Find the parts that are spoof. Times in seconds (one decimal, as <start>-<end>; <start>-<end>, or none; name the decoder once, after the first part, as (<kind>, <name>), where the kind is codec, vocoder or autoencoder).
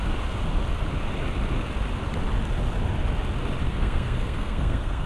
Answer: 3.6-5.1 (codec, SNAC)